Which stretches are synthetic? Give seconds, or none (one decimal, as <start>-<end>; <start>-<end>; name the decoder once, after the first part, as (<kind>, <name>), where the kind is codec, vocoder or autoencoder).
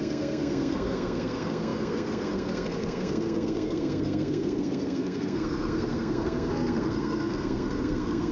0.0-8.3 (codec, SNAC)